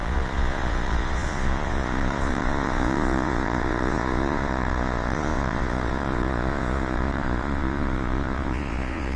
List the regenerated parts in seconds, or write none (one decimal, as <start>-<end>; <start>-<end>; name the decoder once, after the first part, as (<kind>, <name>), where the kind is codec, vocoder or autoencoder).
0.0-9.2 (vocoder, Vocos)